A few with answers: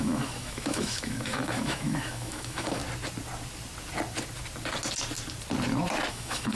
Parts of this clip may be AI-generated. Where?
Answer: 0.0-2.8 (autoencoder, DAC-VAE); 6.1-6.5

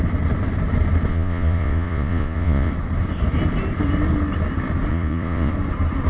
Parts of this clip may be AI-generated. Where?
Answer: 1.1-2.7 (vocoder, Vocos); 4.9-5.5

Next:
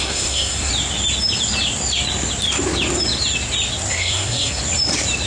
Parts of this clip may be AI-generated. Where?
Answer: 0.0-0.7 (codec, SNAC); 3.9-4.6